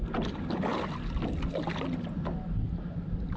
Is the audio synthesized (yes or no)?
no